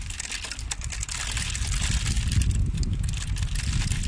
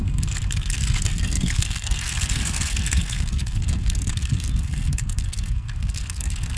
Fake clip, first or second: second